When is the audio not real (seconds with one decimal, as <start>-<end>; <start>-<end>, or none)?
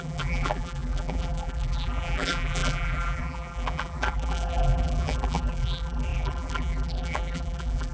0.0-7.9